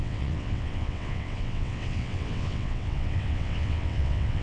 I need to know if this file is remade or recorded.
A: remade